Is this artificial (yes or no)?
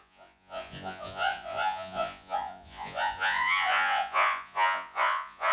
yes